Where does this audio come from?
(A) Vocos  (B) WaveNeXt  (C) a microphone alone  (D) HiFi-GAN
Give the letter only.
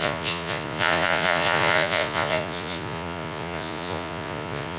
A